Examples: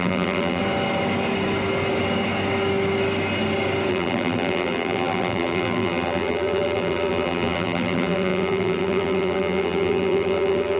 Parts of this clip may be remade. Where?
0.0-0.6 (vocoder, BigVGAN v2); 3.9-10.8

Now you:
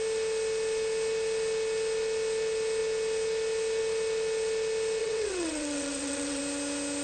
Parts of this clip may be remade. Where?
5.0-6.4 (vocoder, WaveNeXt)

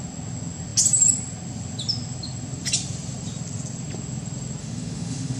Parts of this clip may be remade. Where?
4.6-5.4 (autoencoder, DAC-VAE)

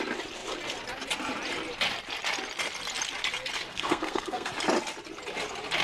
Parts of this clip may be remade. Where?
3.7-4.5 (codec, SNAC)

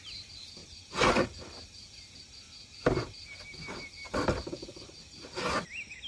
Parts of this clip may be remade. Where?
4.6-5.3 (vocoder, BigVGAN v2)

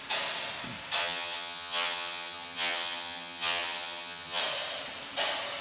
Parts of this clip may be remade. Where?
1.0-4.4 (vocoder, HiFi-GAN)

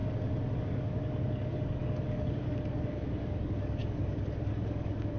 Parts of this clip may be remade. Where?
0.6-5.2 (codec, DAC)